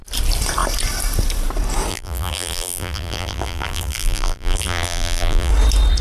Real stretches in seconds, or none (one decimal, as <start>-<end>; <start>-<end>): 0.0-1.9; 5.5-6.0